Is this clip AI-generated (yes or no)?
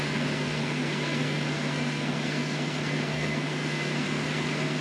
yes